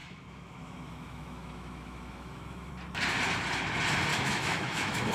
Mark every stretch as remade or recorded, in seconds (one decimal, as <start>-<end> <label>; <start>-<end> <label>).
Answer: 0.0-2.7 remade; 2.7-4.1 recorded; 4.1-5.1 remade